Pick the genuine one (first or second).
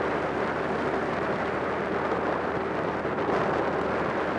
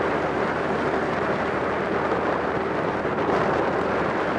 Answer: first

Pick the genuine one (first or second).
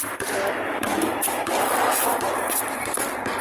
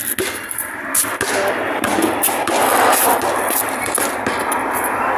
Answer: second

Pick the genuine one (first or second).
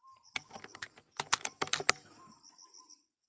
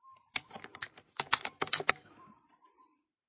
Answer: first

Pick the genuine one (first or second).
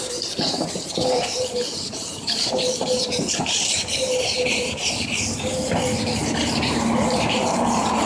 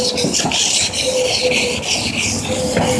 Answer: second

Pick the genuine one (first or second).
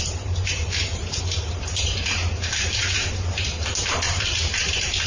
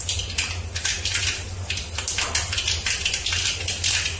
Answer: second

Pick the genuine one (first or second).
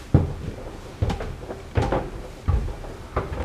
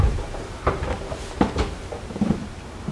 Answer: first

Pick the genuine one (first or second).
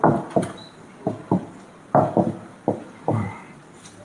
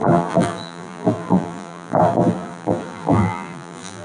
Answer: first